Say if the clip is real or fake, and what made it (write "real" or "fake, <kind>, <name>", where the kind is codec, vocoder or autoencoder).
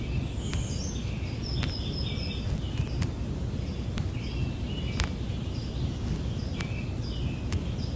real